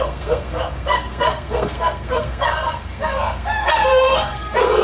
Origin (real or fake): fake